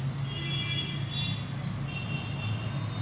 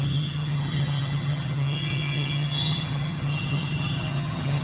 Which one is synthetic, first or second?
second